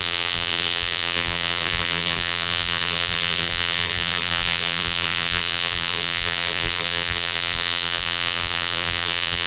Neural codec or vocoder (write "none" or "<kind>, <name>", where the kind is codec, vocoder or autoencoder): vocoder, BigVGAN v2